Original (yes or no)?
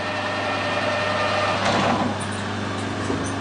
yes